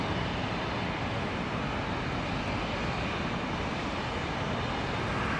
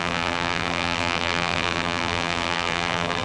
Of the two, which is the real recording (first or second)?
first